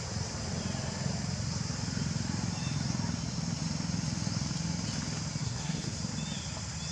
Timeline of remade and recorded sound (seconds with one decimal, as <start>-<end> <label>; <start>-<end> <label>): 0.0-5.4 recorded; 5.4-6.0 remade; 6.0-6.9 recorded